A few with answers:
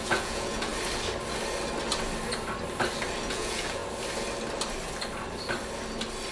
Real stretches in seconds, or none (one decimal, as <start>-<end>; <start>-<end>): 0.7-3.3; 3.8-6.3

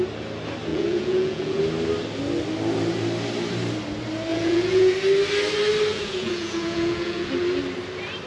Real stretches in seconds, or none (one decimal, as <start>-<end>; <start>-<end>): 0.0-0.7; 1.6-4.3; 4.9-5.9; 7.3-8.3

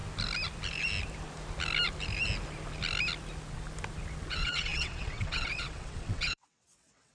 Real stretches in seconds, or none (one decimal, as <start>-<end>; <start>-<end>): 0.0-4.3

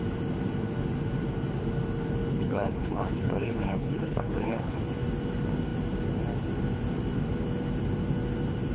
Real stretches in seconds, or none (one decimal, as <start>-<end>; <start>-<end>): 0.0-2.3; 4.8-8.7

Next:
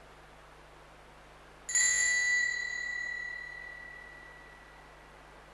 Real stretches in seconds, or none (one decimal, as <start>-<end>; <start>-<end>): 0.0-1.8; 2.4-5.5

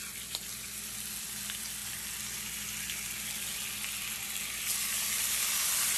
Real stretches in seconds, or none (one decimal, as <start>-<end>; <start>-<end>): 0.0-6.0

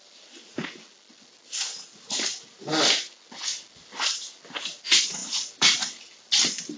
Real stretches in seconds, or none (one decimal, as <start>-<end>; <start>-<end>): 0.0-6.8